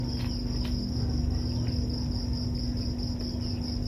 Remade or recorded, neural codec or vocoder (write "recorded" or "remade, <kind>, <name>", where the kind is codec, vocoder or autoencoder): recorded